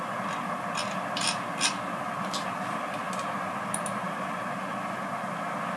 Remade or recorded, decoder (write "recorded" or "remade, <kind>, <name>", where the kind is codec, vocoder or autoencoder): recorded